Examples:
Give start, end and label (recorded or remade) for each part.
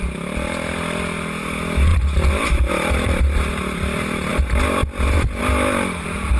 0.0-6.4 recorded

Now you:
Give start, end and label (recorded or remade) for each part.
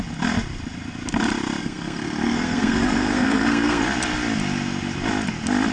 0.0-1.6 recorded; 1.6-3.8 remade; 3.8-5.7 recorded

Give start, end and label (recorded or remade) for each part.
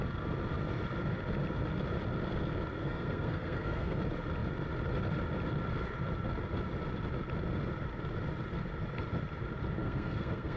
0.0-2.8 recorded; 2.8-4.0 remade; 4.0-9.8 recorded; 9.8-10.6 remade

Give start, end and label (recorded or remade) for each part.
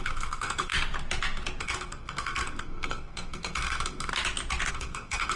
0.0-0.7 remade; 0.7-1.6 recorded; 1.6-4.1 remade; 4.1-4.7 recorded; 4.7-5.4 remade